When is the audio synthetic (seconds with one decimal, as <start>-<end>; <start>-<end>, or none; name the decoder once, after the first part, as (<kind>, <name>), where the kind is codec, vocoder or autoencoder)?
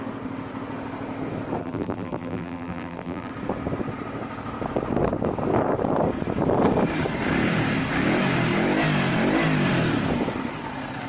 1.6-3.3 (vocoder, BigVGAN v2)